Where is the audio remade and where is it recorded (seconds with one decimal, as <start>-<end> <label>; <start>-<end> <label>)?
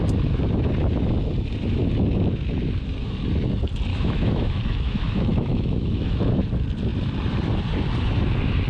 0.0-3.9 recorded; 3.9-6.4 remade; 6.4-8.7 recorded